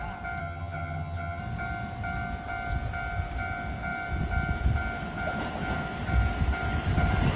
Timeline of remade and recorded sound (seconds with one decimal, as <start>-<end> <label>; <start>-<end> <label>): 0.0-0.4 recorded; 0.4-1.4 remade; 1.4-7.4 recorded